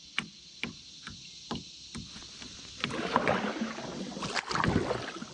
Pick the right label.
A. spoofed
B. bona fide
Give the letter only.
B